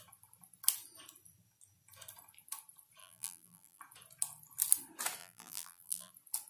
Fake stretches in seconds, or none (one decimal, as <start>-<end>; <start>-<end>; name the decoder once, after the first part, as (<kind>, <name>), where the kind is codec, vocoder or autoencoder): 3.0-3.8 (vocoder, BigVGAN v2); 5.2-6.1